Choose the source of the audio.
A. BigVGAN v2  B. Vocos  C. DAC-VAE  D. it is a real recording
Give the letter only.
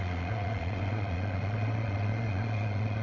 B